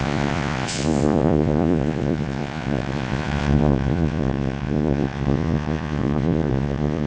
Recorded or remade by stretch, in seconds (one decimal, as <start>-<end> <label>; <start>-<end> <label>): 0.0-7.1 remade